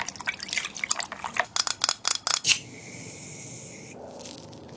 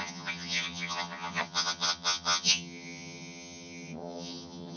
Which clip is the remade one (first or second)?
second